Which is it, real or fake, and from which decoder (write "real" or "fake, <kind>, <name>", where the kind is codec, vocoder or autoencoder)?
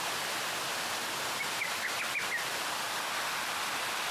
real